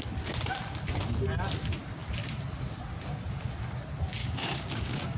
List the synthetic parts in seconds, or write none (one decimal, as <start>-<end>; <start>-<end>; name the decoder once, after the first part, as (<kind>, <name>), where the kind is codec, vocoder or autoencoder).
4.2-5.2 (codec, DAC)